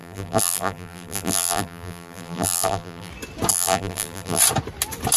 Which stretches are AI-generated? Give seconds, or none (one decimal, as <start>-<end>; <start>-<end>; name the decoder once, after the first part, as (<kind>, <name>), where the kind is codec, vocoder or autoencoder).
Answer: 0.0-3.1 (vocoder, BigVGAN v2); 3.5-4.4